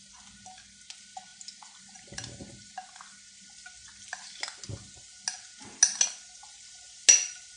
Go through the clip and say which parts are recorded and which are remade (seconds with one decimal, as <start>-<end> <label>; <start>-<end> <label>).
0.0-1.3 recorded; 1.3-2.7 remade; 2.7-3.8 recorded; 3.8-4.3 remade; 4.3-7.6 recorded